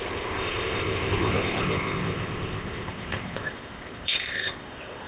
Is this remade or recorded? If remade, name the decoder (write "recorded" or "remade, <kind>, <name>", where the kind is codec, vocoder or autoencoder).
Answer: remade, codec, ZipCodec